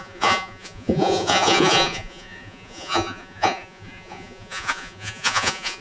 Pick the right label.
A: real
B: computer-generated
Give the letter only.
B